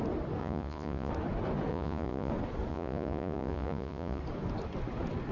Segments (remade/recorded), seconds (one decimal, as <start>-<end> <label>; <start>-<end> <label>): 0.0-0.4 recorded; 0.4-1.1 remade; 1.1-1.7 recorded; 1.7-2.3 remade; 2.3-2.7 recorded; 2.7-4.2 remade; 4.2-5.3 recorded